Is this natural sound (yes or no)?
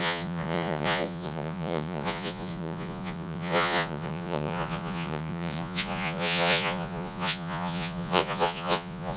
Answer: no